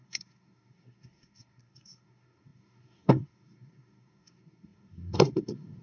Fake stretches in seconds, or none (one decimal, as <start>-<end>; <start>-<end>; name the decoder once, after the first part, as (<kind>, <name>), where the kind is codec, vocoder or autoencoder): 0.0-5.8 (codec, SNAC)